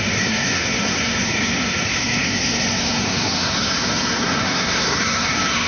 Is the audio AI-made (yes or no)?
yes